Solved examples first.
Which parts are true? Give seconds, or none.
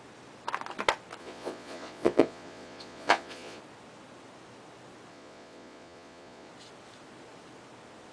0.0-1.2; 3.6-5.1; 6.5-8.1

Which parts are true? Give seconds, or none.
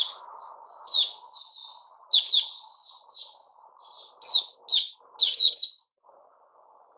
1.6-5.2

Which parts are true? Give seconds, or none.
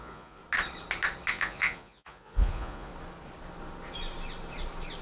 0.4-1.3; 2.9-5.0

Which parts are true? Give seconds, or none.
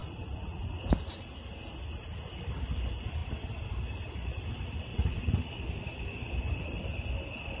0.6-4.9; 5.4-7.6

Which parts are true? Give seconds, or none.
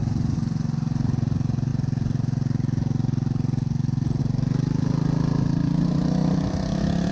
0.0-7.1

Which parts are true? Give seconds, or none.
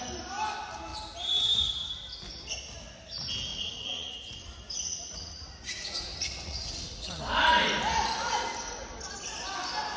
0.0-3.5; 7.2-10.0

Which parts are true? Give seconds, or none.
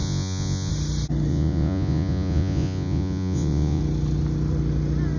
0.7-1.3; 3.8-5.2